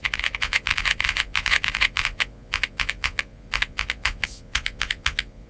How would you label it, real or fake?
fake